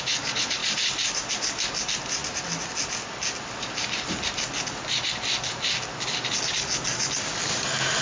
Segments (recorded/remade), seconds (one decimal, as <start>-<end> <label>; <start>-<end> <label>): 0.0-8.0 recorded